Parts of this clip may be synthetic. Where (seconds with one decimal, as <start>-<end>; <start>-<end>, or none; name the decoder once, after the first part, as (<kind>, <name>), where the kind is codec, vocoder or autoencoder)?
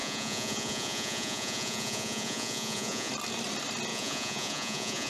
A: 0.0-3.1 (vocoder, Vocos); 3.9-5.1